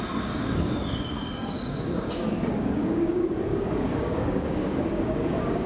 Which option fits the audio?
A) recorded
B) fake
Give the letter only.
B